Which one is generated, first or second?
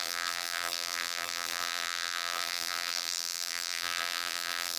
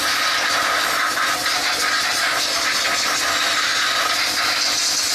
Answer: first